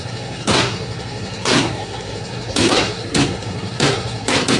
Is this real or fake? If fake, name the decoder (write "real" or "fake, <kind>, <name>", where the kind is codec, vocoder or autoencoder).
fake, codec, SNAC